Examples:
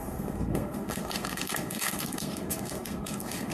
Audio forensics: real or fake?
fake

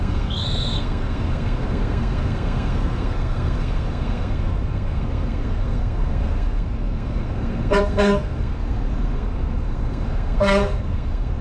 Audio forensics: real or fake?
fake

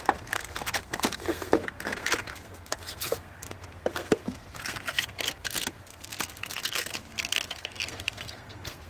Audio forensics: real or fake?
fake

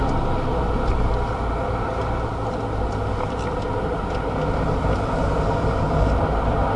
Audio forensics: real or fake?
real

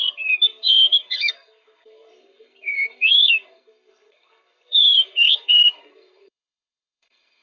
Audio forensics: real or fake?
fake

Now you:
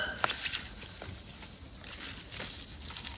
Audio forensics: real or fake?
real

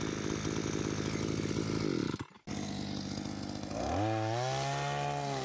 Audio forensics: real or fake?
real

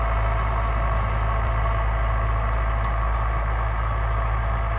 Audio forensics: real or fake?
real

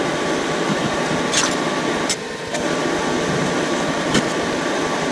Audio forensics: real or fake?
real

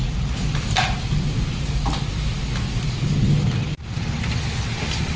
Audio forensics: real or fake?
real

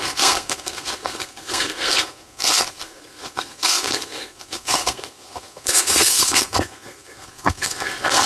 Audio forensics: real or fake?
fake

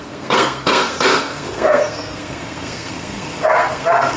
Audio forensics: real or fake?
fake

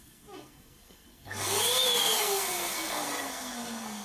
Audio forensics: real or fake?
fake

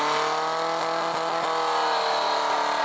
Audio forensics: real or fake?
real